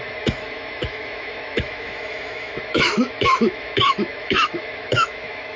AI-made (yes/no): yes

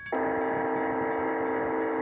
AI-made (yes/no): no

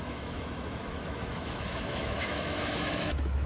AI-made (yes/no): yes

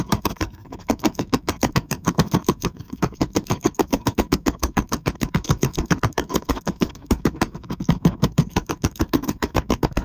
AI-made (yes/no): yes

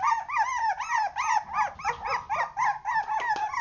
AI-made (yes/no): no